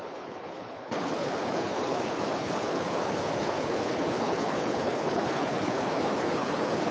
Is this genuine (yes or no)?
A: no